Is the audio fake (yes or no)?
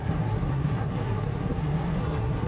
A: yes